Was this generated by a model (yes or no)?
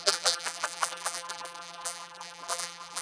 yes